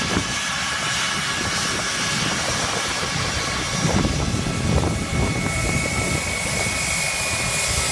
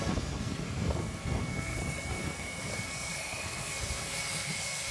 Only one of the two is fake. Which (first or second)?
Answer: second